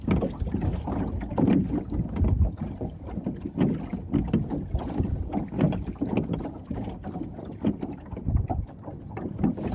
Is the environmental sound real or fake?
real